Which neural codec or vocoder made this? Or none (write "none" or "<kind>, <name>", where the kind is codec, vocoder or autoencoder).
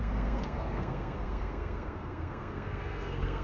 codec, SNAC